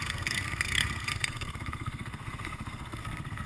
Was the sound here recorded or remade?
remade